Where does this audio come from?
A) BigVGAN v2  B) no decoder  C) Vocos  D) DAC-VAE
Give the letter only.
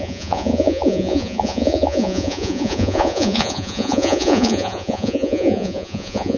C